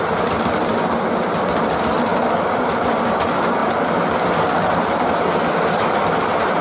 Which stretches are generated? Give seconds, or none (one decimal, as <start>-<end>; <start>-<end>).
none